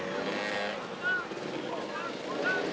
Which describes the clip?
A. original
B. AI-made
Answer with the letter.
A